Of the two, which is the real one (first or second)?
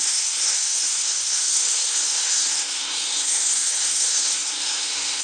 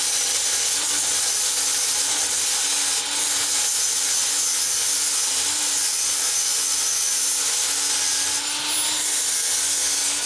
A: second